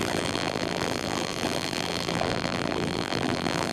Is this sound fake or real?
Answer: fake